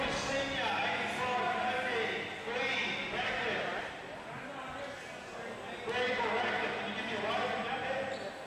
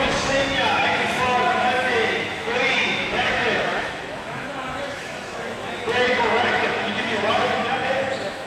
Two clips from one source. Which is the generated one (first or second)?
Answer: second